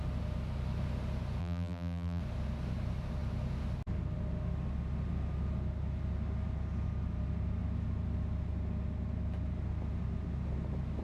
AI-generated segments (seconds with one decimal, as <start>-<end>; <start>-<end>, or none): 1.4-2.2